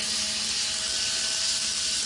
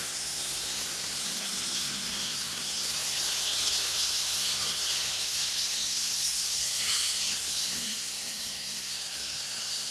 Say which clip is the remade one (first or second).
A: second